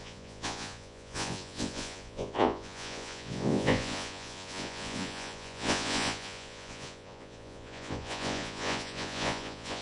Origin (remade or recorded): remade